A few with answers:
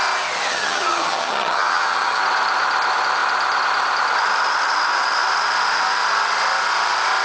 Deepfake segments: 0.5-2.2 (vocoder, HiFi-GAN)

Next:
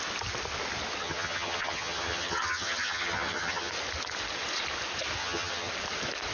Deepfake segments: 1.0-3.7 (vocoder, HiFi-GAN); 5.2-5.7